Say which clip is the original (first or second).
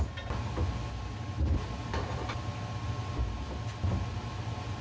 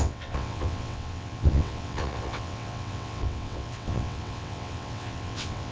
first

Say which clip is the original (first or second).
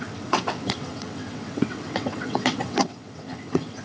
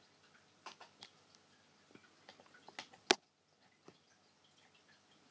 second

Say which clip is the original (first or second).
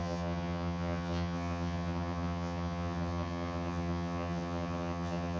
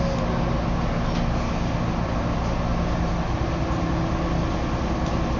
second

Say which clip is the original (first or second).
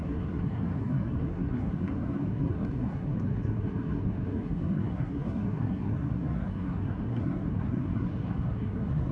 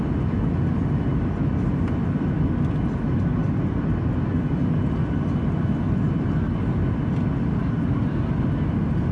second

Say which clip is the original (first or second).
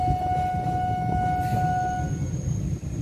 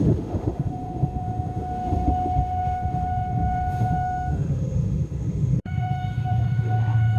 first